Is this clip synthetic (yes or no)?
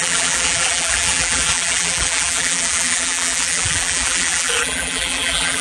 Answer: yes